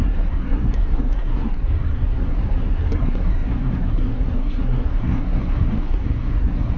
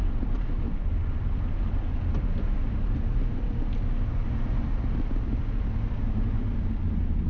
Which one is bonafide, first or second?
second